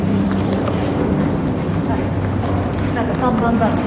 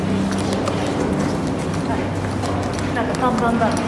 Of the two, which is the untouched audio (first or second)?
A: second